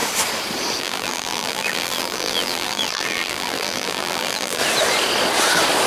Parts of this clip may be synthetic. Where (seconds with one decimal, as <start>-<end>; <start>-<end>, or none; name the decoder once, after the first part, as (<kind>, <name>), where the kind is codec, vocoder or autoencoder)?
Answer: 0.8-4.6 (vocoder, BigVGAN v2)